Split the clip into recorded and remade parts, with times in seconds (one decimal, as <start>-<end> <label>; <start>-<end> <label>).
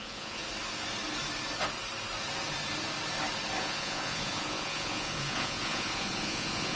0.0-0.4 remade; 0.4-3.6 recorded; 3.6-6.8 remade